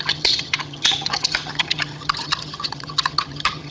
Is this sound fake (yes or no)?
yes